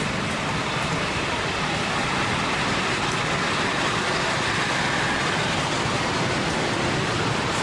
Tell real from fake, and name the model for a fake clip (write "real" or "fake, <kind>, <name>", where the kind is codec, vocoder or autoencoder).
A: real